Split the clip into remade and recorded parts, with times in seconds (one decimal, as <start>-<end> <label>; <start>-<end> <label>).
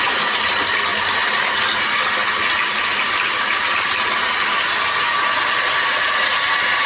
0.0-0.9 recorded; 0.9-4.8 remade; 4.8-6.9 recorded